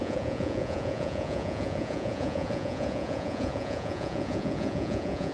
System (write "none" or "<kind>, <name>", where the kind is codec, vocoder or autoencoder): vocoder, Vocos